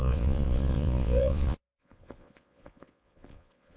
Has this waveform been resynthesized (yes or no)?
yes